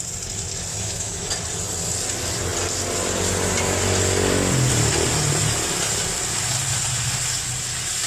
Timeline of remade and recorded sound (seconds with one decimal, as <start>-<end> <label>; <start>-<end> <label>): 0.0-0.7 recorded; 0.7-1.3 remade; 1.3-8.1 recorded